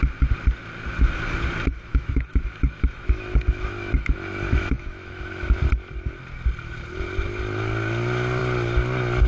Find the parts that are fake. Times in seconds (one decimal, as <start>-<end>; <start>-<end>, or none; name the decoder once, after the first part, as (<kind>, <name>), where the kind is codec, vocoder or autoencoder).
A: 1.9-5.6 (autoencoder, DAC-VAE)